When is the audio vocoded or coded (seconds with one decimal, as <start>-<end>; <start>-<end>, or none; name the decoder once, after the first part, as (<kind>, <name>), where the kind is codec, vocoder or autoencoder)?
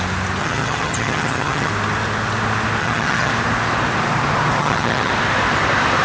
0.4-1.7 (vocoder, HiFi-GAN); 2.8-3.3; 4.6-5.1